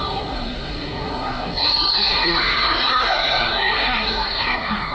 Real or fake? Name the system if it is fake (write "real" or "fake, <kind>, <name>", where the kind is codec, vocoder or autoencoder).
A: fake, codec, SNAC